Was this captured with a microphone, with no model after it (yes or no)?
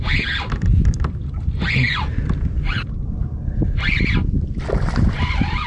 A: no